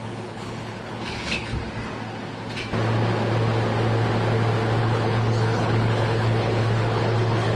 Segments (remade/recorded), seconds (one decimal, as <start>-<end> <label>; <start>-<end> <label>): 0.0-1.5 remade; 1.5-4.8 recorded; 4.8-7.6 remade